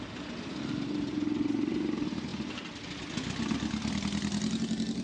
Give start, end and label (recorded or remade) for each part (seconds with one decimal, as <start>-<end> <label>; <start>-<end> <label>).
0.0-5.0 recorded